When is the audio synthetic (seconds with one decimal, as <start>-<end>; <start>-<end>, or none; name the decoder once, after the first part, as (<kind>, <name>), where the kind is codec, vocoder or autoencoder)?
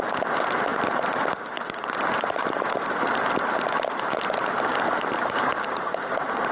0.0-6.5 (vocoder, BigVGAN v2)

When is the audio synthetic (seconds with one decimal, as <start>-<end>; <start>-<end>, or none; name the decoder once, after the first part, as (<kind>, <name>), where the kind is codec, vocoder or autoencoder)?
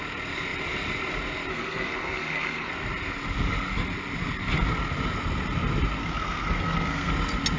1.5-2.7 (codec, SNAC); 6.0-7.1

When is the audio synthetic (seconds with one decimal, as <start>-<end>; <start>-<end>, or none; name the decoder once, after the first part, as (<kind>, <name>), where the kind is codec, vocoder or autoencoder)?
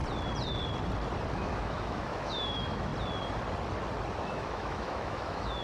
1.3-2.9 (autoencoder, DAC-VAE); 4.2-5.6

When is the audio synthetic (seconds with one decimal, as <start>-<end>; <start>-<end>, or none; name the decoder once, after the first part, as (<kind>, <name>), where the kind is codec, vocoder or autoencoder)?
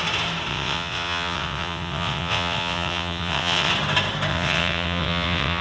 0.5-3.7 (vocoder, WaveNeXt); 4.3-5.6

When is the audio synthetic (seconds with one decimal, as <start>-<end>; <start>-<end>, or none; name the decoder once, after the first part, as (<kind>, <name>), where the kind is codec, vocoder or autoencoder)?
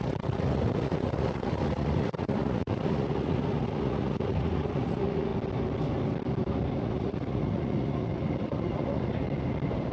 0.0-5.3 (vocoder, Vocos); 6.8-9.2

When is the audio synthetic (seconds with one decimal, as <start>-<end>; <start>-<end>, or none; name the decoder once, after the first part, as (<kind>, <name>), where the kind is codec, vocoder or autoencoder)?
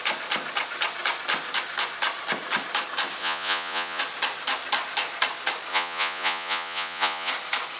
3.2-4.0 (vocoder, Vocos); 5.7-7.3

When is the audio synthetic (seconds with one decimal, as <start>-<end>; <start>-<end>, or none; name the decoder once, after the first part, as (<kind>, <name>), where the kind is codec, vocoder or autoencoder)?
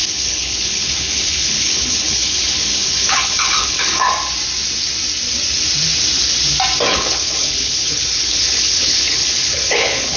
0.0-4.1 (codec, HILCodec); 6.9-10.2